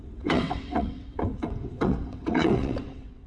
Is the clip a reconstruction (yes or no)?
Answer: yes